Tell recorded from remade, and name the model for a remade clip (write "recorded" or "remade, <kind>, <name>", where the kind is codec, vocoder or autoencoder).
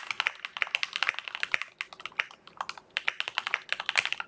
recorded